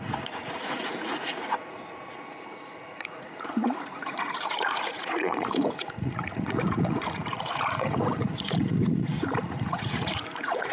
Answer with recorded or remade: remade